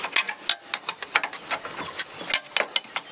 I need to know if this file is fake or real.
real